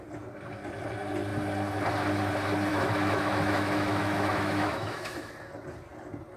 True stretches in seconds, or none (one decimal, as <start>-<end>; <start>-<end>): 0.0-2.7; 5.3-6.4